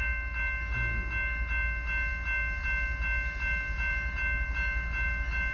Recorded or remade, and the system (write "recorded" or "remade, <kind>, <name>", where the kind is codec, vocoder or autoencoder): recorded